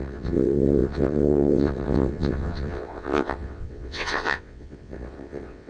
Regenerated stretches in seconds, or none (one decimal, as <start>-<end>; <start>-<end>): 0.0-5.7